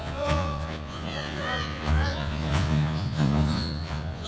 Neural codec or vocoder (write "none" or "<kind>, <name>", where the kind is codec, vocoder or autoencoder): vocoder, Vocos